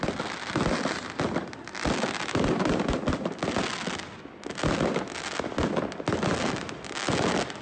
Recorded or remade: recorded